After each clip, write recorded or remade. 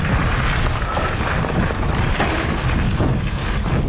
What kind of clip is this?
recorded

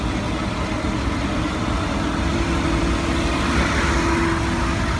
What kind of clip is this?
recorded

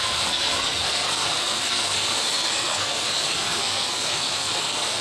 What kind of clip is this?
remade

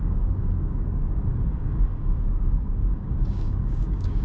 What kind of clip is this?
remade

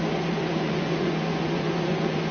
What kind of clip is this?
remade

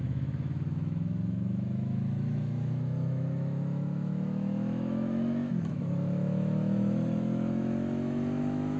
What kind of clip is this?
remade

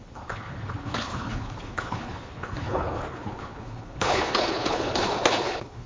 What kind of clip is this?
remade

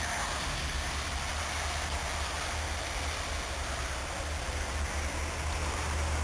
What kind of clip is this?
recorded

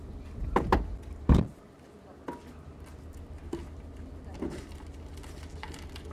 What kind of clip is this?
recorded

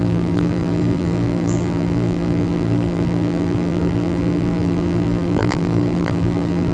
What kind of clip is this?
remade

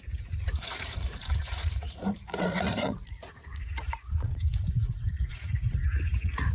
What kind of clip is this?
remade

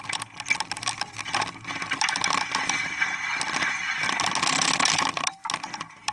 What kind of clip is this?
recorded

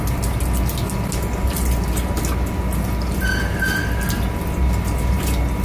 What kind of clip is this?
recorded